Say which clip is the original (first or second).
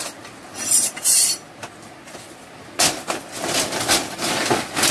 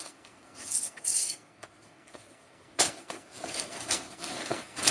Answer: first